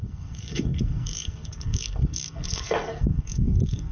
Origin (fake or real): fake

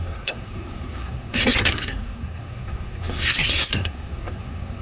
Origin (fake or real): fake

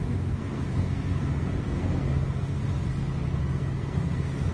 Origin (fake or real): fake